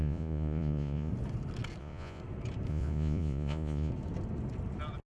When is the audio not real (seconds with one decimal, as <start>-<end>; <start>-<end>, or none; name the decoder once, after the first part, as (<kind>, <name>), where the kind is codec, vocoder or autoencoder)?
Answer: 0.0-1.1 (vocoder, Vocos); 1.8-2.2; 2.7-3.9